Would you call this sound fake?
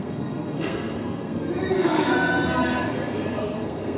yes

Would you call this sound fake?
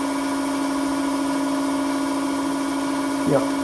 no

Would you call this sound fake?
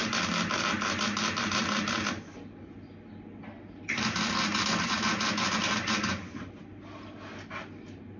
no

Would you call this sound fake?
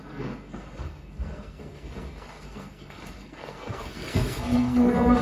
yes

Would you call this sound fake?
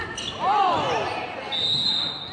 no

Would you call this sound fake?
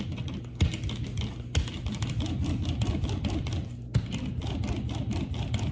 no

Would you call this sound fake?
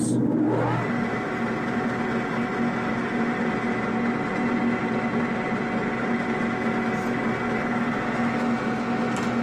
no